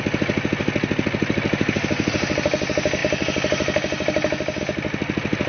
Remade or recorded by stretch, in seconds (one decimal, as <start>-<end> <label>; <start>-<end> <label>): 0.0-5.5 recorded